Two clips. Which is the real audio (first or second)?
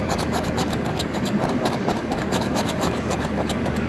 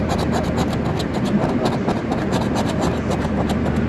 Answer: second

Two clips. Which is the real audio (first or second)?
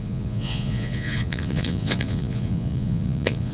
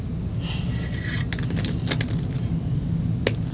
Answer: second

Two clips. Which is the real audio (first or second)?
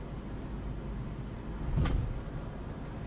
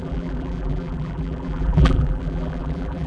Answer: first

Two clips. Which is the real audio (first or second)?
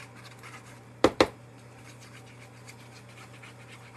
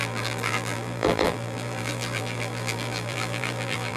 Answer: first